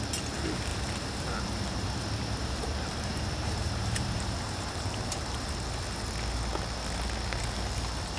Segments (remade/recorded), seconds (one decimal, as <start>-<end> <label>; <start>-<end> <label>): 0.0-0.7 recorded; 0.7-5.5 remade; 5.5-8.2 recorded

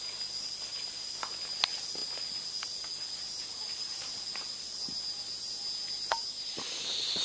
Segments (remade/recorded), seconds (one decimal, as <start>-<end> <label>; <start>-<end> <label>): 0.0-7.2 recorded

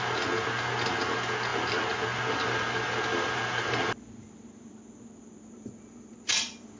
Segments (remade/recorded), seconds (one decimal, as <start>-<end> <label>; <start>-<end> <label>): 0.0-6.8 recorded

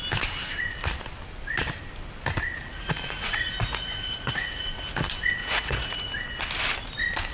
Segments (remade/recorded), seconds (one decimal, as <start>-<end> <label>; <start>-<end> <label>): 0.0-2.5 recorded; 2.5-4.8 remade; 4.8-5.4 recorded; 5.4-6.1 remade; 6.1-7.3 recorded